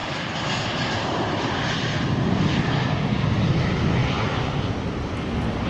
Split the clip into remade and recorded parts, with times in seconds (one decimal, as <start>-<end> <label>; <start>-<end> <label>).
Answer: 0.0-4.0 recorded; 4.0-4.7 remade; 4.7-5.7 recorded